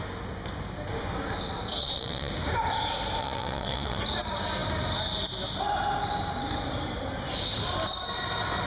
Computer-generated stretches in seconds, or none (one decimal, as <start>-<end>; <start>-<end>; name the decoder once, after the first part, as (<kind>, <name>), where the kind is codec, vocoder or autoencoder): 1.8-2.3 (vocoder, WaveNeXt); 3.2-4.0